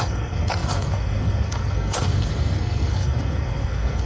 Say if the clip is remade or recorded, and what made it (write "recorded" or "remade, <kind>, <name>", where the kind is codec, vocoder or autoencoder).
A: remade, codec, SNAC